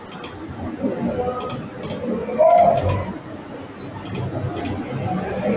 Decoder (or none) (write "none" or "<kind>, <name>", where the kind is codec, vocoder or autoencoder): none